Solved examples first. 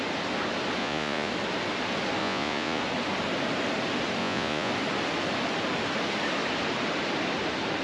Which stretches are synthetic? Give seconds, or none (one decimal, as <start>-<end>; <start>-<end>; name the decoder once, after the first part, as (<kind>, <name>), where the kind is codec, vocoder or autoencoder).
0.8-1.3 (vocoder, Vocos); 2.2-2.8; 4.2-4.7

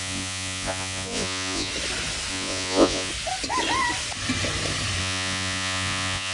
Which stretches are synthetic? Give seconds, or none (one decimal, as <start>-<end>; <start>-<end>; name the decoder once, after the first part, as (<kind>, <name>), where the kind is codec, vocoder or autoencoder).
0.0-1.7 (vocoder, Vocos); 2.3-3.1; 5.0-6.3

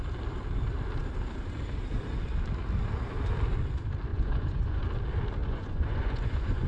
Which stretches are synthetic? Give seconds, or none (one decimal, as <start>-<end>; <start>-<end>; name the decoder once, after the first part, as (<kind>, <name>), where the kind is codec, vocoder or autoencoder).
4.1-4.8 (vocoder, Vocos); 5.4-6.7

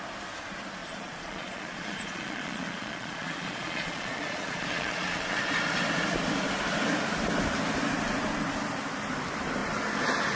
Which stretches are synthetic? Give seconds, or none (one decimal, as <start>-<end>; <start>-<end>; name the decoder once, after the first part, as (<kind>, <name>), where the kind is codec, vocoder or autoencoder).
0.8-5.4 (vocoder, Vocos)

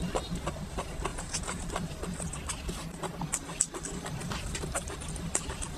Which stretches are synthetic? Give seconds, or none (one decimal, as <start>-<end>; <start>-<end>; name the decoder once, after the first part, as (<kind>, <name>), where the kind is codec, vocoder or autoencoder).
1.1-1.6 (vocoder, Vocos)

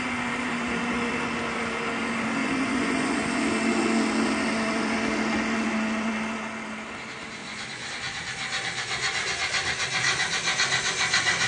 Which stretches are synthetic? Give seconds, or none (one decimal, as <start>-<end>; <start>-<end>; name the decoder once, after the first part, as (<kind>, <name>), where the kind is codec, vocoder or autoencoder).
2.4-3.4 (vocoder, Vocos); 7.4-7.9

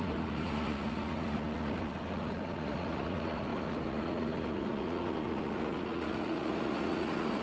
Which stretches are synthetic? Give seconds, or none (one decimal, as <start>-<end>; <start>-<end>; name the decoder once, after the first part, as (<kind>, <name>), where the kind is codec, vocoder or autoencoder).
0.0-7.4 (vocoder, Vocos)

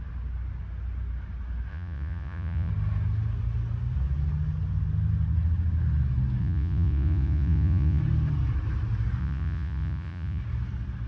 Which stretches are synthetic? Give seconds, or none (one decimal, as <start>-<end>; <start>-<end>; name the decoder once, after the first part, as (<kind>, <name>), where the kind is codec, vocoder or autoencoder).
1.7-2.7 (vocoder, Vocos); 6.4-8.0; 9.2-10.4